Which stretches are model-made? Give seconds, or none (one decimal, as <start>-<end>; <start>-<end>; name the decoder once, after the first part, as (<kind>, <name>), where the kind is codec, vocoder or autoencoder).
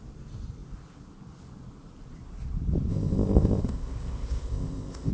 2.9-5.1 (codec, ZipCodec)